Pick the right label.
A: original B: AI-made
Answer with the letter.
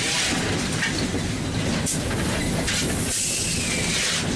A